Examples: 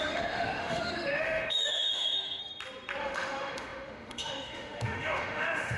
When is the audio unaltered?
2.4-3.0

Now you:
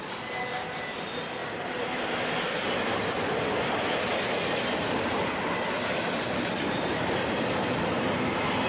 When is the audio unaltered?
0.0-8.7